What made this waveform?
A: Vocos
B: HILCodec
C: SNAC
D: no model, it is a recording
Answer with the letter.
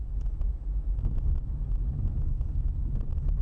D